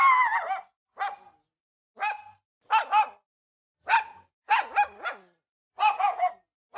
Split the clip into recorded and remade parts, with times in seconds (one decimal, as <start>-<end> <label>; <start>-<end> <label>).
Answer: 0.0-6.8 recorded